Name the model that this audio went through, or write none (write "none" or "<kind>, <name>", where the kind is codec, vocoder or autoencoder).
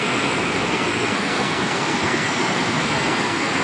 codec, SNAC